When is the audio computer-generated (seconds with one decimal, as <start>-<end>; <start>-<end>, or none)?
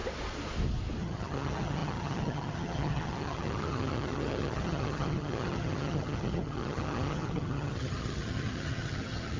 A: 1.0-9.4